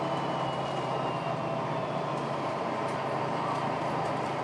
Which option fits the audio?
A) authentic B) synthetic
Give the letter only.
A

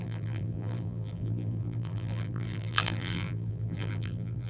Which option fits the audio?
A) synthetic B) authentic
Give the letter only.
A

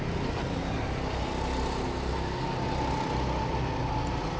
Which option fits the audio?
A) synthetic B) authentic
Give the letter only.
B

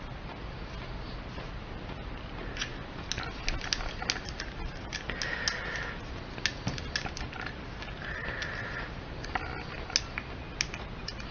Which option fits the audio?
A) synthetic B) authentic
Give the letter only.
B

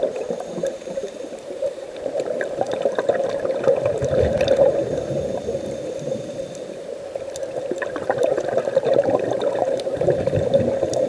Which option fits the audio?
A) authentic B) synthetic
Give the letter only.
B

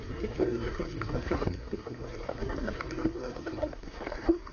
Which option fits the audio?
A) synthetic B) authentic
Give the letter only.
A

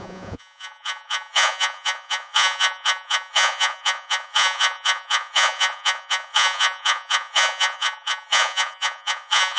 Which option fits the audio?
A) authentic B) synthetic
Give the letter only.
B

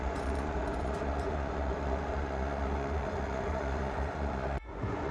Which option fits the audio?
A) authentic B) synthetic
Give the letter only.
B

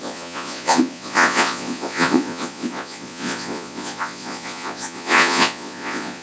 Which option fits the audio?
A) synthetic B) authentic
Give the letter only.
A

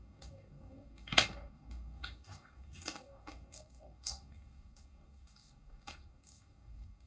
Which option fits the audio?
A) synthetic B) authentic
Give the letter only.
A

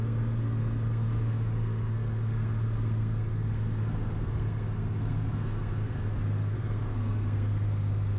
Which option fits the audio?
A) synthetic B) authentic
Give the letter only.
A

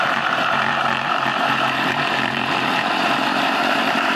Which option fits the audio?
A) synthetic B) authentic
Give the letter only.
A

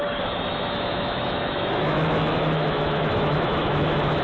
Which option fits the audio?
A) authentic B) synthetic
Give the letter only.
B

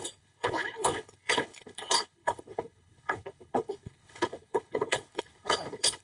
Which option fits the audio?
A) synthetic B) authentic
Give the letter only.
A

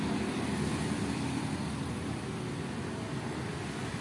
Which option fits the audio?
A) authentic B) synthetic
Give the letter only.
A